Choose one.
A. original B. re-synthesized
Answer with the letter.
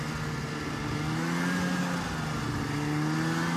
A